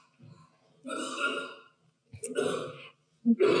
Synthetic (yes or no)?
no